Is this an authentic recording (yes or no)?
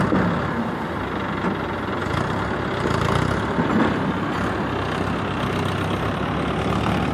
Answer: yes